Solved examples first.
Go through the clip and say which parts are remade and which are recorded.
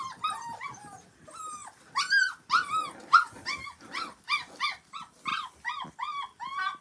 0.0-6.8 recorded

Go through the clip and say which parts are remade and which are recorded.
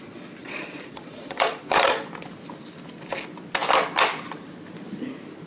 0.0-0.4 recorded; 0.4-2.1 remade; 2.1-5.5 recorded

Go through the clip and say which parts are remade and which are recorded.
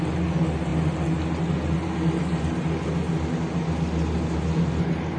0.0-5.2 recorded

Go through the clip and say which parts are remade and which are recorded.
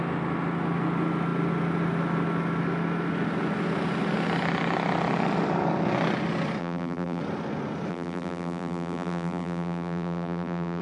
0.0-6.6 recorded; 6.6-7.2 remade; 7.2-7.9 recorded; 7.9-10.8 remade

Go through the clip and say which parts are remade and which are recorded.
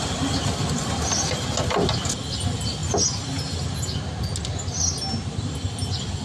0.0-6.2 recorded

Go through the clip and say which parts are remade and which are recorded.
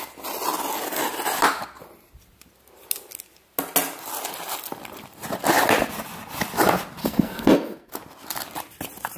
0.0-7.0 recorded; 7.0-7.9 remade; 7.9-9.2 recorded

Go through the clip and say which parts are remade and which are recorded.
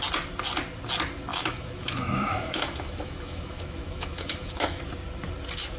0.0-1.3 recorded; 1.3-4.8 remade; 4.8-5.8 recorded